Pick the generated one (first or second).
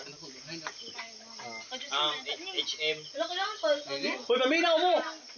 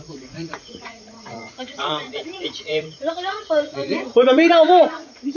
second